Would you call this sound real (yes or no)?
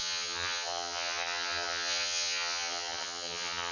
no